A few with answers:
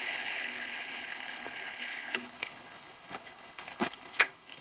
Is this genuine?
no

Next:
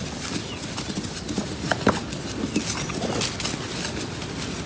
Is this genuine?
yes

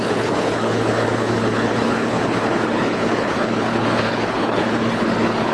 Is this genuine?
no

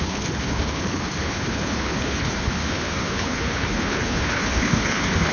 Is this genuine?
no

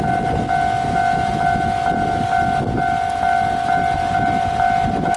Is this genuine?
yes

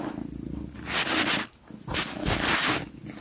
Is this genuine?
yes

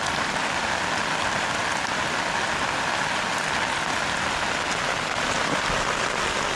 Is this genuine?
yes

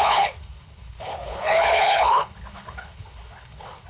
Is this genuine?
no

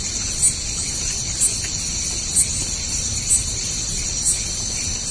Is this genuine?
yes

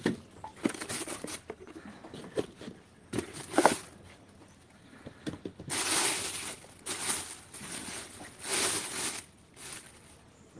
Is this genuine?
yes